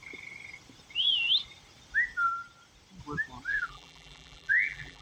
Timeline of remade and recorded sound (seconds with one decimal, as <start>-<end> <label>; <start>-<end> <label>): 0.0-3.5 recorded; 3.5-5.0 remade

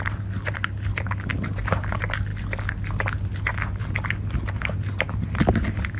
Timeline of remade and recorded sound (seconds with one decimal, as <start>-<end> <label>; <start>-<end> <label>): 0.0-6.0 recorded